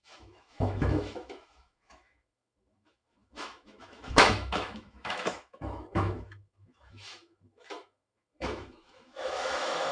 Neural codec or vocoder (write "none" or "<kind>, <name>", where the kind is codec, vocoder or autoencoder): autoencoder, DAC-VAE